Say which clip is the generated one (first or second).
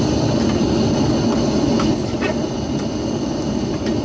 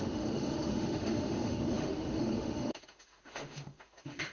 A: second